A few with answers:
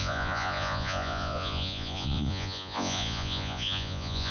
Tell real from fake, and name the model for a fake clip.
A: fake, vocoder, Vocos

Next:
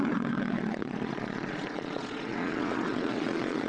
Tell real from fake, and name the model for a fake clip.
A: fake, vocoder, Vocos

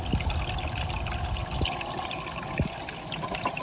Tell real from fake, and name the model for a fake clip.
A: real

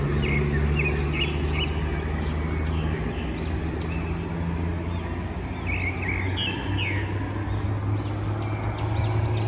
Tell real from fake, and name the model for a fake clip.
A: real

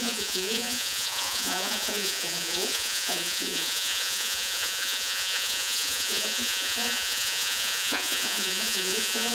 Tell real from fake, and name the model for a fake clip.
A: fake, vocoder, Vocos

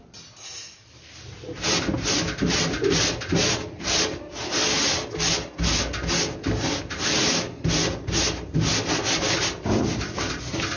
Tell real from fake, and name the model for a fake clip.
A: real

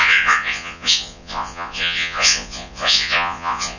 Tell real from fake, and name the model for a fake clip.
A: fake, vocoder, Vocos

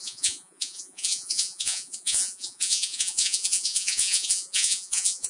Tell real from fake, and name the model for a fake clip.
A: fake, vocoder, Vocos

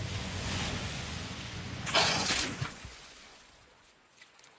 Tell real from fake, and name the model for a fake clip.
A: fake, vocoder, Vocos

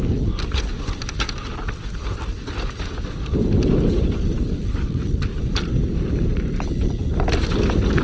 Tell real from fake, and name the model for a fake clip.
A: real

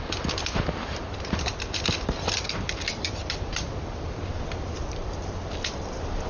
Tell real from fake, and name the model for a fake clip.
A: real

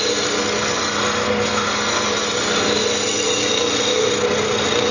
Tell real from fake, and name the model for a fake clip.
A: real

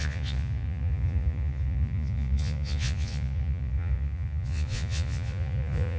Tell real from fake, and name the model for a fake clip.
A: fake, vocoder, Vocos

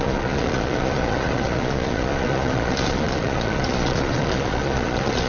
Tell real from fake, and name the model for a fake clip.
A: fake, vocoder, Vocos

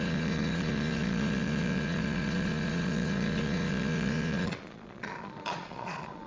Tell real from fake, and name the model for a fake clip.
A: fake, vocoder, Vocos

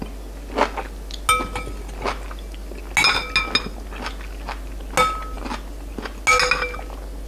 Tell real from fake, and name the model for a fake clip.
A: real